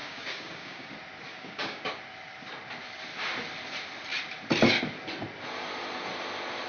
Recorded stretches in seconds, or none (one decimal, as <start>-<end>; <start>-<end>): 0.9-1.3; 2.0-6.7